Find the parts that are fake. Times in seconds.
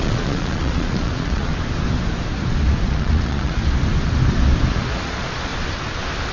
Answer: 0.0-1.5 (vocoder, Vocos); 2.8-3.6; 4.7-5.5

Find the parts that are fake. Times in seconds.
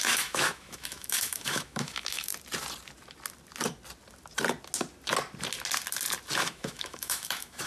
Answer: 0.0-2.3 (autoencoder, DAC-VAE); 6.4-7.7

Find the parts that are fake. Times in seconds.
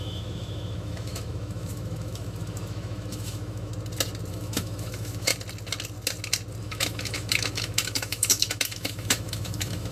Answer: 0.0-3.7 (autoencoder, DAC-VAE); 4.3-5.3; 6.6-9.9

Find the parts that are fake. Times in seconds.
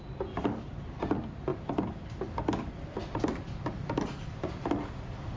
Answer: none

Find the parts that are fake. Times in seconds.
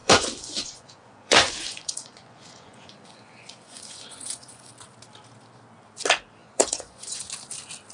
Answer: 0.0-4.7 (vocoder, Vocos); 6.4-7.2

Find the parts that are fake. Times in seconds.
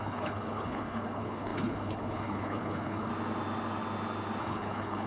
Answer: 0.0-3.1 (codec, HILCodec); 4.4-5.1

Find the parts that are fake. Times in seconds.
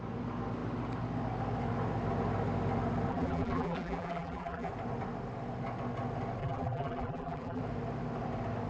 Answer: 3.1-4.7 (vocoder, BigVGAN v2); 6.4-7.6